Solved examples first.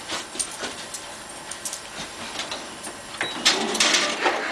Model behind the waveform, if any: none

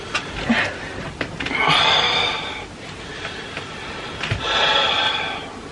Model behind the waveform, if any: none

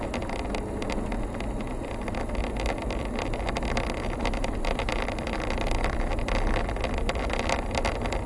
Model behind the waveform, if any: none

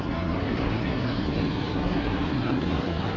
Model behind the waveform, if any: codec, SNAC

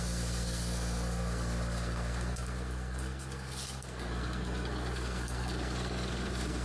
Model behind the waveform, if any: codec, SNAC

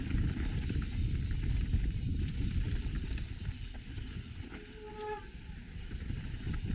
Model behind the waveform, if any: none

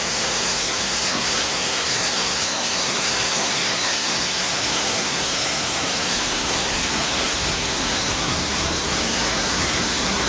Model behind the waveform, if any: codec, SNAC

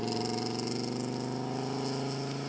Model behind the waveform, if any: none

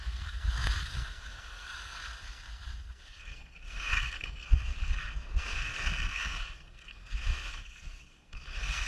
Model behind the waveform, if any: codec, SNAC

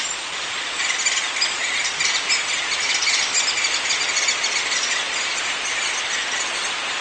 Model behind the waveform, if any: none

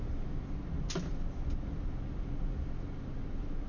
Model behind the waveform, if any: none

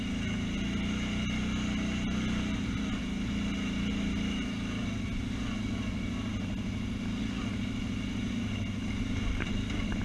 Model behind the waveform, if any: none